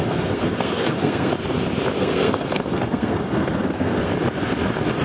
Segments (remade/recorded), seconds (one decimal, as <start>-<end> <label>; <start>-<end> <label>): 0.0-1.3 remade; 1.3-2.0 recorded; 2.0-4.1 remade; 4.1-5.0 recorded